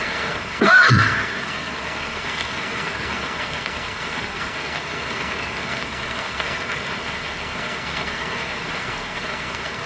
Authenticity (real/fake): fake